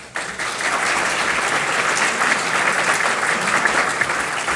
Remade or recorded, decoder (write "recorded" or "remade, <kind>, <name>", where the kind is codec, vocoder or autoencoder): recorded